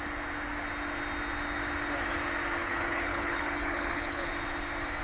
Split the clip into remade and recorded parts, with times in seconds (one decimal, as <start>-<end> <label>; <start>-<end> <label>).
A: 0.0-2.6 recorded; 2.6-4.3 remade; 4.3-5.0 recorded